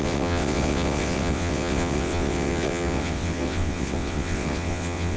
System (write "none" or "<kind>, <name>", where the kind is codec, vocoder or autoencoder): vocoder, WaveNeXt